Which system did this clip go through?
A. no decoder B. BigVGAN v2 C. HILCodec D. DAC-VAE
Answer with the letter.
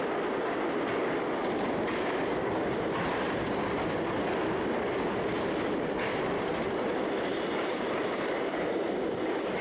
B